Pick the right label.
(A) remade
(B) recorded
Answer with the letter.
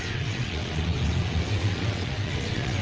A